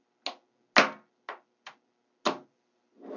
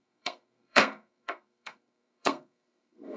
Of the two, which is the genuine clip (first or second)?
first